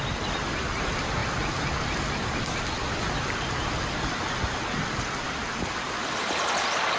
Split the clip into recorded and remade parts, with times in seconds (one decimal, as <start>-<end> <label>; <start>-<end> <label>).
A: 0.0-7.0 recorded